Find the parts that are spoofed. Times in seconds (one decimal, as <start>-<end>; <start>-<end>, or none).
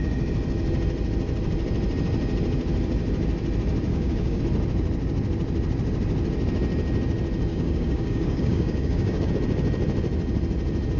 3.9-4.4; 7.5-9.3